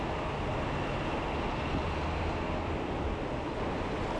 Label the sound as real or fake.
real